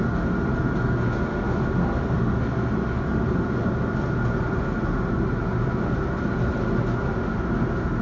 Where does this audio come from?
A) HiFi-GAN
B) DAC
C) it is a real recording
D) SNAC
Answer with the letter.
C